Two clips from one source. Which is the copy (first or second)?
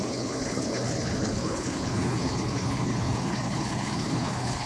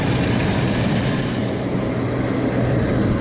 first